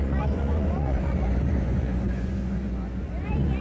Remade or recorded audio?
remade